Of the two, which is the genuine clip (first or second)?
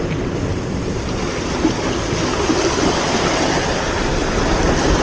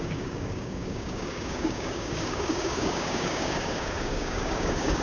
first